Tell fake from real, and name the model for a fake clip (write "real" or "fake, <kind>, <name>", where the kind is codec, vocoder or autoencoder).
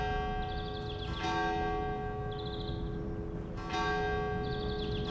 real